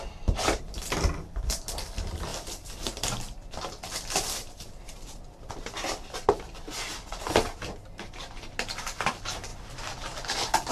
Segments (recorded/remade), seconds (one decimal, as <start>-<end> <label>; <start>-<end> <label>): 0.0-2.3 recorded; 2.3-6.3 remade; 6.3-10.7 recorded